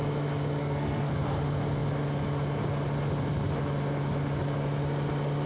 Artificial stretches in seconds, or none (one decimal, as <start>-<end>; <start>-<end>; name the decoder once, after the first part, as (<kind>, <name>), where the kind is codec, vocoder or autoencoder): 0.6-1.1 (codec, SNAC)